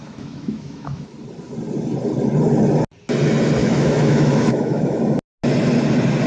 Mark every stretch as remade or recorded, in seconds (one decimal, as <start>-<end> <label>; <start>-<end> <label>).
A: 0.0-1.1 remade; 1.1-3.6 recorded; 3.6-5.0 remade; 5.0-6.3 recorded